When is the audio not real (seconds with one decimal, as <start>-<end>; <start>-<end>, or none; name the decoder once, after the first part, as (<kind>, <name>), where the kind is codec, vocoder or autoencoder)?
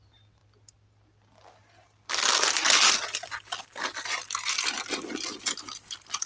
none